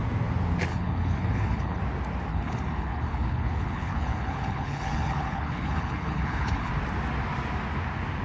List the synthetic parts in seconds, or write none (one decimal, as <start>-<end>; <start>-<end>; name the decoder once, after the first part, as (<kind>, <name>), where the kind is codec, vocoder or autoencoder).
0.7-1.8 (codec, HILCodec); 2.3-6.7